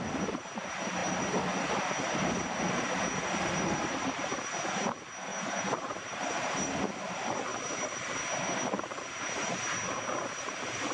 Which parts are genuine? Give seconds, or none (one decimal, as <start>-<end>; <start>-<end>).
0.0-5.3; 6.6-10.9